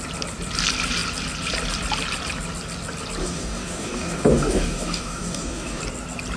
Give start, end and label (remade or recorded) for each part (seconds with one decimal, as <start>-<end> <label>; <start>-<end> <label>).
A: 0.0-3.2 recorded; 3.2-5.8 remade; 5.8-6.4 recorded